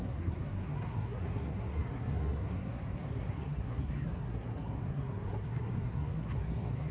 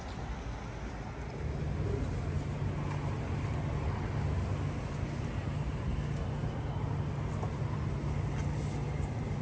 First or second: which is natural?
second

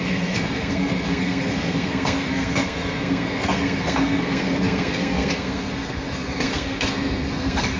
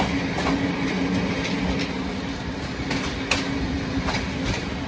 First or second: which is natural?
second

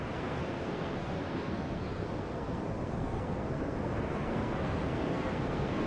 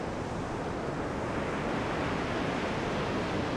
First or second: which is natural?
second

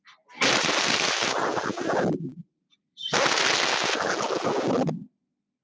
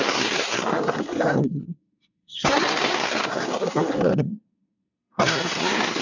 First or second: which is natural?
first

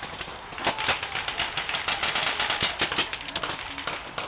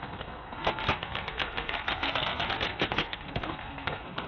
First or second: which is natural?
first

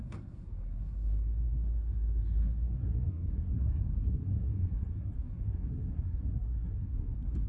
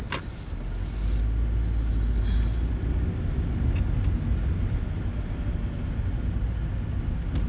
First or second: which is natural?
second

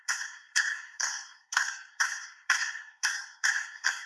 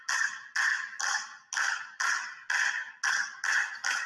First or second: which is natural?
second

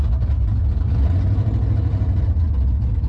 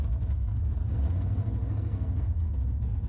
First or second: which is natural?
first